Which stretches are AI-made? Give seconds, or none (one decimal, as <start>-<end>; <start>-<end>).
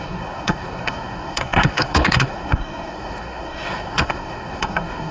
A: 0.0-5.1